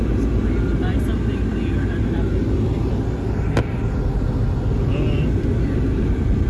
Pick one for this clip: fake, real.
real